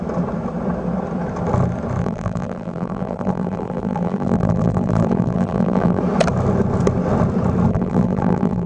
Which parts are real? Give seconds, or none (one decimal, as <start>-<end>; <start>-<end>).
0.0-2.0; 6.0-7.7